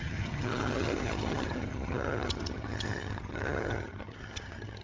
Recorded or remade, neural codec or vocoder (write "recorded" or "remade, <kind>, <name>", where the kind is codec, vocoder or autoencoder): remade, vocoder, HiFi-GAN